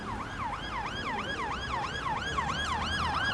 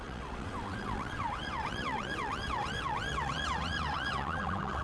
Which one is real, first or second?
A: first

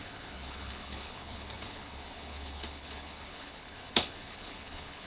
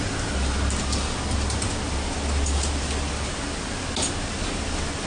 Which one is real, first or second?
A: second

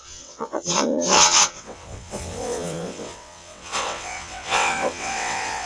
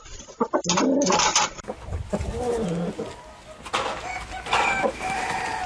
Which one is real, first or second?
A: second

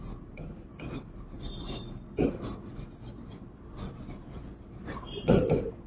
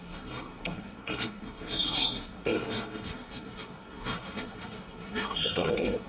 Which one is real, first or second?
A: first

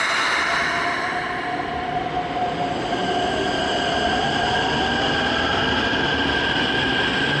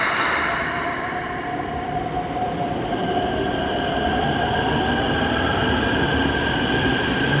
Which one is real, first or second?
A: first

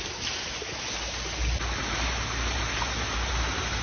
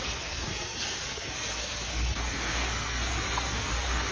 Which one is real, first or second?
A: first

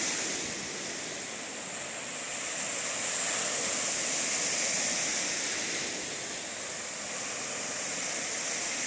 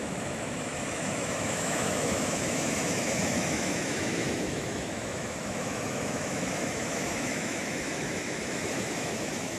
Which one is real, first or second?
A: first